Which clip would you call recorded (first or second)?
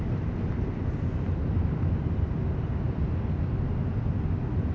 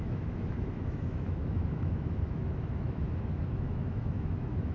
first